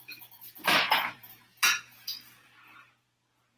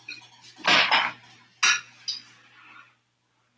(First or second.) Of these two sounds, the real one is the second